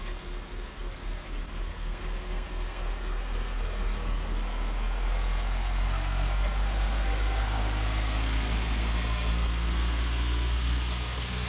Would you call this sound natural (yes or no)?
no